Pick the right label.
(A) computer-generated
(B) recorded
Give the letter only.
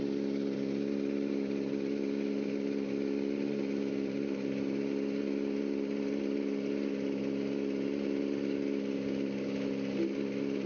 B